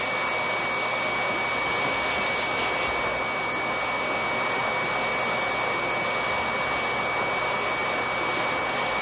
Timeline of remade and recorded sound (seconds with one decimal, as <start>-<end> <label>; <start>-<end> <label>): 0.0-9.0 recorded